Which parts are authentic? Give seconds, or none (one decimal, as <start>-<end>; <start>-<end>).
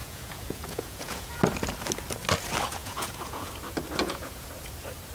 1.4-2.8; 3.5-4.0; 4.5-5.1